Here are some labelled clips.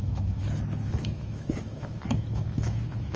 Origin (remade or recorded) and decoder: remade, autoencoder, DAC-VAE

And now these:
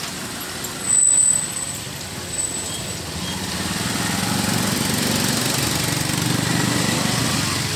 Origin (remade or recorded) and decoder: recorded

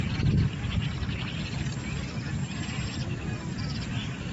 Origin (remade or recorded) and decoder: recorded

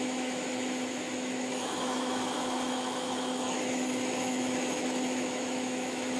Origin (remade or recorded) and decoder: remade, autoencoder, DAC-VAE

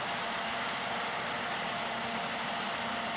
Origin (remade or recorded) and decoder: recorded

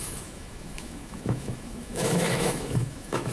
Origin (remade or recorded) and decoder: remade, autoencoder, DAC-VAE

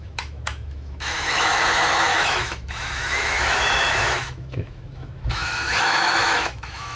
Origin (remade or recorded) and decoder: remade, autoencoder, DAC-VAE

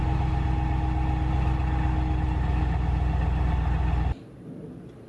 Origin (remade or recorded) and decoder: recorded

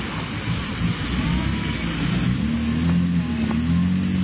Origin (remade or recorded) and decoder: recorded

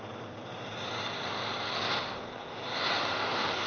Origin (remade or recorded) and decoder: recorded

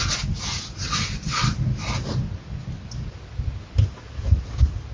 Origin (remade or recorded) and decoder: recorded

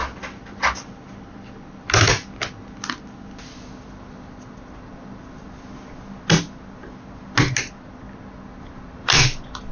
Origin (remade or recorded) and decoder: recorded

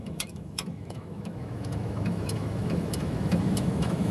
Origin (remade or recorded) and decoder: remade, autoencoder, DAC-VAE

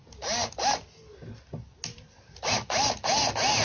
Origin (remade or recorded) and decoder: recorded